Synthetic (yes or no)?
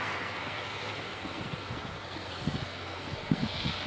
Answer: yes